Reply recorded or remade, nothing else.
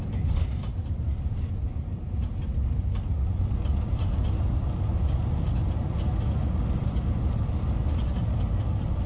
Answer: recorded